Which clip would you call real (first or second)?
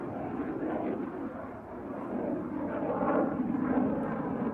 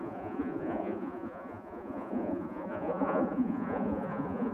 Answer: first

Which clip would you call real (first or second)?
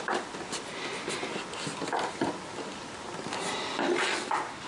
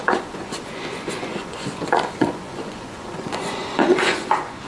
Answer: first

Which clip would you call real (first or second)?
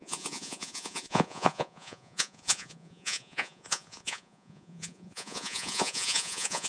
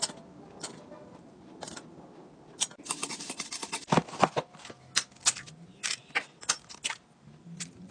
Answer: second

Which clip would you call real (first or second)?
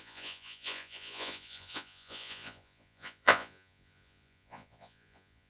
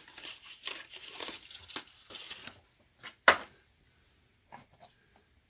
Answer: second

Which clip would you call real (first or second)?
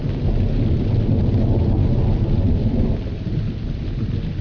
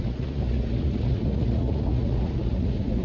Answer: first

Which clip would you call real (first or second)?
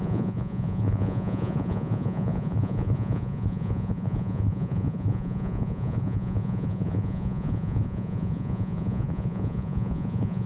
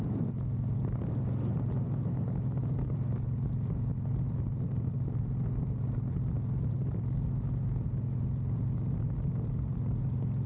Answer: second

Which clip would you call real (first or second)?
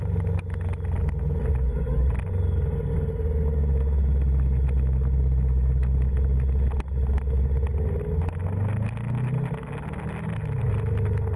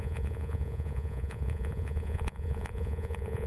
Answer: first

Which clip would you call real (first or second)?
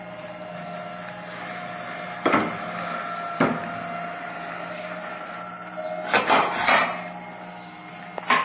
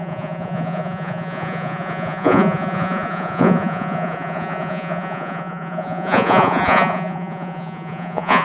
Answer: first